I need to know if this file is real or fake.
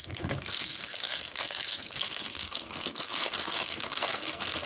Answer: fake